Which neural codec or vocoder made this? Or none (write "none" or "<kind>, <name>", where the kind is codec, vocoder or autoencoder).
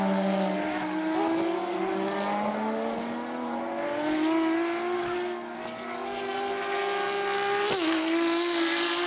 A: none